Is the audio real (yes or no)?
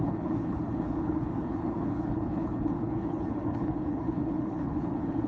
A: no